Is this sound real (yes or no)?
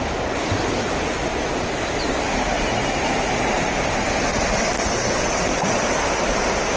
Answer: yes